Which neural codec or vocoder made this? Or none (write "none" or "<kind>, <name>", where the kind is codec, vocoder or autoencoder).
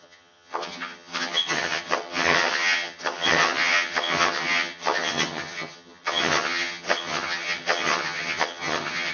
vocoder, HiFi-GAN